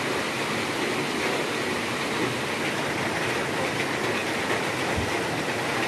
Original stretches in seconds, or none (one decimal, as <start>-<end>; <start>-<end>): 0.0-5.9